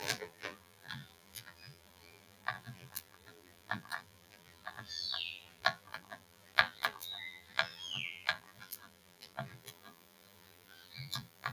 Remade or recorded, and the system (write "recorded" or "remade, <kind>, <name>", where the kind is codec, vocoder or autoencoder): remade, vocoder, BigVGAN v2